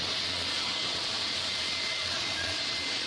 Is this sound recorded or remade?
remade